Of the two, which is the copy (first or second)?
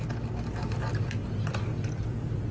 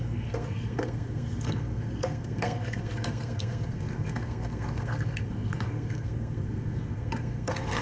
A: second